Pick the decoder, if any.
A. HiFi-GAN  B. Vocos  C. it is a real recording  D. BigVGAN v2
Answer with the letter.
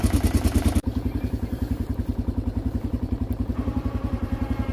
D